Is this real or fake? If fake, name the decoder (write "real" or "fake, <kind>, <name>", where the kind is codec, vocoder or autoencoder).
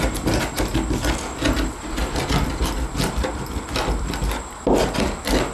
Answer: real